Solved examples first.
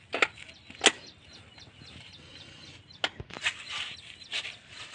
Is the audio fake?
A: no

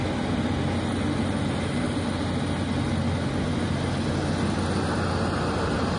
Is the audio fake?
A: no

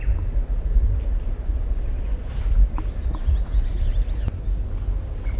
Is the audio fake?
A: no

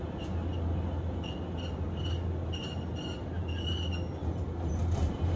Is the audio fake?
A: no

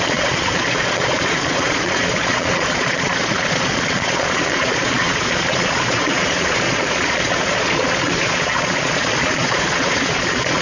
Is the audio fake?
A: yes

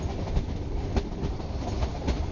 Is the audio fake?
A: no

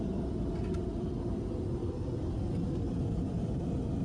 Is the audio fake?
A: no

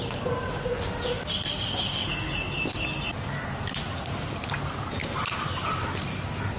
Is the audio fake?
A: no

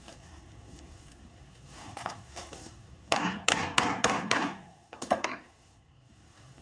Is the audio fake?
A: yes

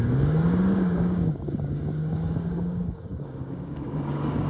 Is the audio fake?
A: yes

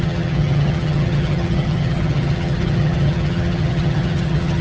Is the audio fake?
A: yes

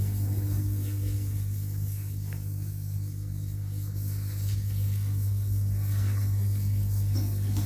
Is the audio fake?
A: yes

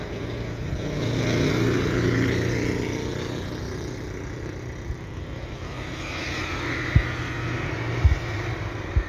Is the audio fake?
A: no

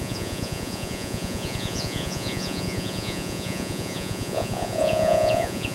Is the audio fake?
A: yes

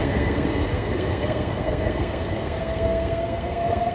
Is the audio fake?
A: yes